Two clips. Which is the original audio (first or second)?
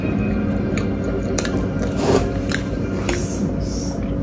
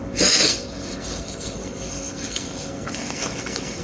first